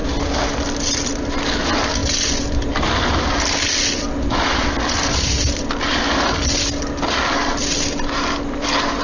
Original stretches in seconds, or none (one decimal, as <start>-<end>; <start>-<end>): 0.0-9.0